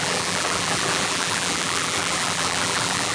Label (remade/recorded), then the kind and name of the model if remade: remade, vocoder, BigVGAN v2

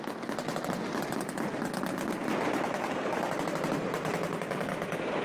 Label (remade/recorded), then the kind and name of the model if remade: recorded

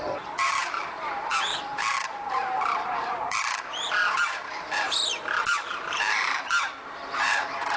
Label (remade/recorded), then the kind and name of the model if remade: remade, vocoder, BigVGAN v2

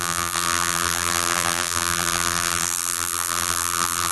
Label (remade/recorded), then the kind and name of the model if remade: remade, vocoder, BigVGAN v2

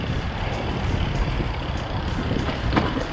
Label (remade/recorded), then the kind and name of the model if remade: remade, vocoder, BigVGAN v2